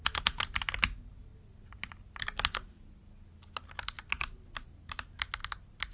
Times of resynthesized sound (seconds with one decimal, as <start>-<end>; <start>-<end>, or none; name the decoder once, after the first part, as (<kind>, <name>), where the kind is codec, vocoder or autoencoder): none